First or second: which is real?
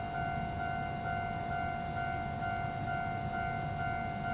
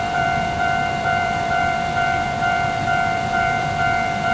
first